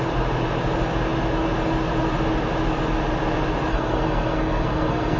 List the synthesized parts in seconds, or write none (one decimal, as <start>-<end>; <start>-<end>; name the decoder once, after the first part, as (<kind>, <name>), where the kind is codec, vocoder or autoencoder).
3.7-5.2 (codec, SNAC)